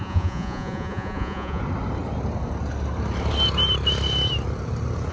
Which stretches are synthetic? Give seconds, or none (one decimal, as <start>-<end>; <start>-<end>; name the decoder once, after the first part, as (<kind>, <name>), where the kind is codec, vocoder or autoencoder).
0.0-1.6 (vocoder, Vocos)